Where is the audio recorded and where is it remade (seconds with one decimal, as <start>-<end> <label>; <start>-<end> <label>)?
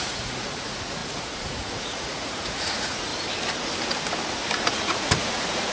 0.0-3.1 remade; 3.1-4.7 recorded; 4.7-5.7 remade